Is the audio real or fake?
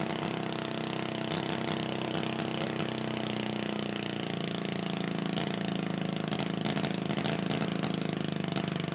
real